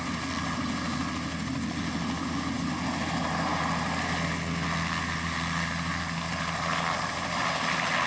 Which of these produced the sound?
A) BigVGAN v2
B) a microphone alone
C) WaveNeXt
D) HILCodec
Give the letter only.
B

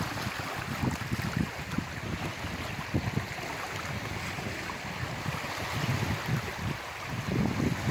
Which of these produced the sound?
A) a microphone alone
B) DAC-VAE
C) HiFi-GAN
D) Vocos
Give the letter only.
A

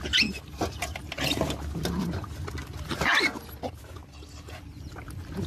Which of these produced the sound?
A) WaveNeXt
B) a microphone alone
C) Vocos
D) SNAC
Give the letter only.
B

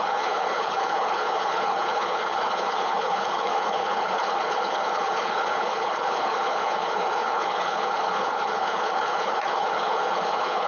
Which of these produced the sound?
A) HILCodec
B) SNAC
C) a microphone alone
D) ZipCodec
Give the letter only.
A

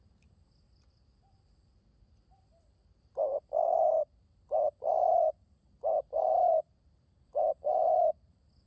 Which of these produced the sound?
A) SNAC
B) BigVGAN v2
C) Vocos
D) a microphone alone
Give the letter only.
B